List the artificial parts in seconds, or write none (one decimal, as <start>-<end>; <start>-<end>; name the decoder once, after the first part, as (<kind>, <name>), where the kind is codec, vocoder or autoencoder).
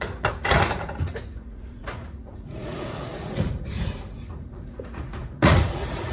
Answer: 0.0-6.1 (vocoder, Vocos)